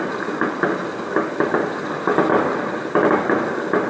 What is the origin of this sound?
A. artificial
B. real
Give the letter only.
B